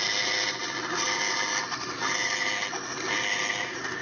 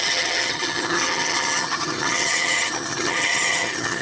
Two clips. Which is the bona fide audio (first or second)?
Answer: first